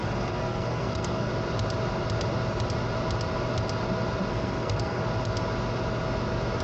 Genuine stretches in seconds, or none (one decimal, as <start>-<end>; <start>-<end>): 1.3-4.3; 5.0-6.6